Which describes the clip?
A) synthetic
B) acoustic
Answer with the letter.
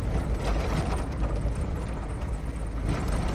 B